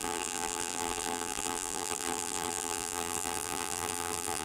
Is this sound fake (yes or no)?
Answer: yes